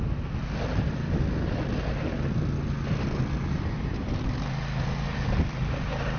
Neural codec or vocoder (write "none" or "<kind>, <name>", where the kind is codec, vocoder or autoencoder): none